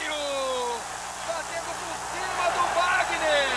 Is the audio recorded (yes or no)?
yes